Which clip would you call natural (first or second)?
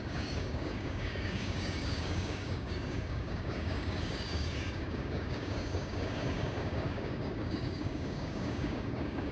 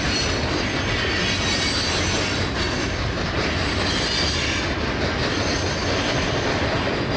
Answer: second